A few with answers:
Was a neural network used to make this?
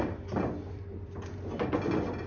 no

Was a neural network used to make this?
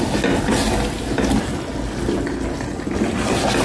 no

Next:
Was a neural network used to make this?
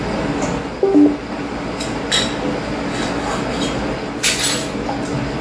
no